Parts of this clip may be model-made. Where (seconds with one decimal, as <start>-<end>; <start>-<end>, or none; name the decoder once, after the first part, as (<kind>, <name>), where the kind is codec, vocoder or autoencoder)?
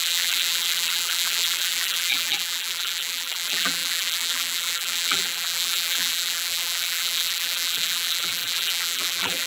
0.0-9.5 (vocoder, BigVGAN v2)